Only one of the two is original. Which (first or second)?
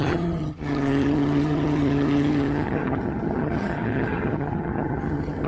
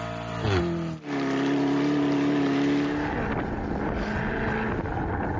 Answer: second